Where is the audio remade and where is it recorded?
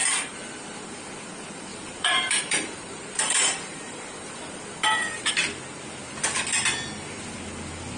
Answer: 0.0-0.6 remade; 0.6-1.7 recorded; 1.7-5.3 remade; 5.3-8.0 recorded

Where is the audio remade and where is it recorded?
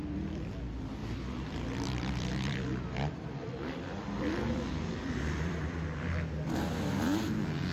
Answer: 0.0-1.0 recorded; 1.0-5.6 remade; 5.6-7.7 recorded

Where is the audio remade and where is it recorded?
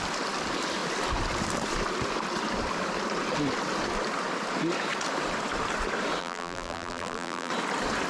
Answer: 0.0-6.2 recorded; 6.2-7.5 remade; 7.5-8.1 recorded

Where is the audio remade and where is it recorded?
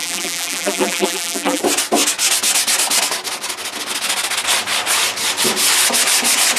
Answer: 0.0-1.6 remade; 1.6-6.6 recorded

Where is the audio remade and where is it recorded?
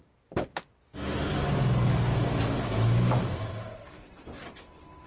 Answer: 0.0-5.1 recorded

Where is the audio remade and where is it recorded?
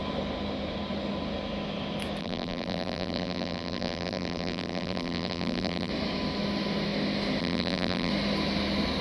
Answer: 0.0-2.2 recorded; 2.2-5.9 remade; 5.9-7.4 recorded; 7.4-8.1 remade; 8.1-9.0 recorded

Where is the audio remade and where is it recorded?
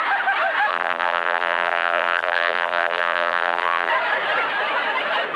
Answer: 0.0-0.7 recorded; 0.7-3.9 remade; 3.9-5.4 recorded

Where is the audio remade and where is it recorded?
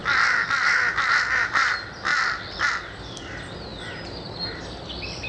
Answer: 0.0-5.3 recorded